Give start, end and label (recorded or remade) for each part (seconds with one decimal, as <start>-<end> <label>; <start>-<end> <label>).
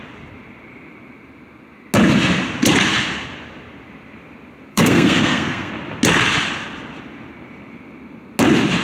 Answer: 0.0-4.7 recorded; 4.7-5.7 remade; 5.7-8.8 recorded